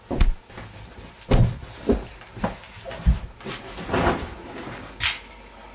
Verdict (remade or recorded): recorded